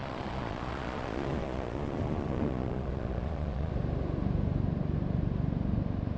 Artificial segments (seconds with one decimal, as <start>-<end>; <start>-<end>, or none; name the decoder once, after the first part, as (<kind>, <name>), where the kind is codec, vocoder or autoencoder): 0.0-3.7 (vocoder, Vocos)